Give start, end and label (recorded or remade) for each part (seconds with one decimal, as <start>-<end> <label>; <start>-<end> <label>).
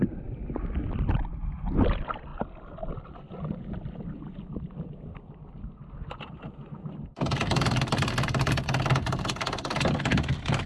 0.0-10.7 recorded